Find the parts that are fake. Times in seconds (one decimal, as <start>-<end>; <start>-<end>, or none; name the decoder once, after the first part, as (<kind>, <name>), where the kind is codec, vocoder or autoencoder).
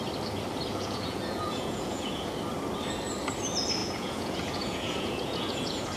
0.7-2.3 (vocoder, Vocos); 3.8-6.0